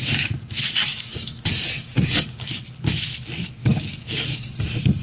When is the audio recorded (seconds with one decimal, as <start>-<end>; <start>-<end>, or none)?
0.0-0.9; 2.6-3.6; 4.5-5.0